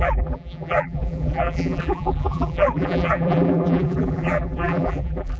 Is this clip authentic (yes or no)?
no